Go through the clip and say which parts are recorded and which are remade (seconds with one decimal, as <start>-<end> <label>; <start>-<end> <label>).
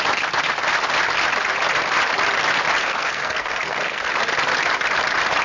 0.0-2.8 recorded; 2.8-4.1 remade; 4.1-5.4 recorded